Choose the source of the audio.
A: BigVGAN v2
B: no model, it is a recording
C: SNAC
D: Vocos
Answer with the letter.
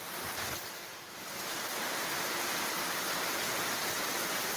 A